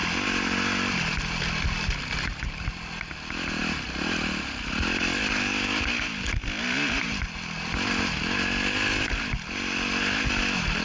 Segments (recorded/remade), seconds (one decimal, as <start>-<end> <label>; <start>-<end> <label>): 0.0-10.8 recorded